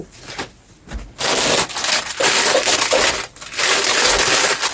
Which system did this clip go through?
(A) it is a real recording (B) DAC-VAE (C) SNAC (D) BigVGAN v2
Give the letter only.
A